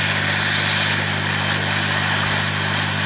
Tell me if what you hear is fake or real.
real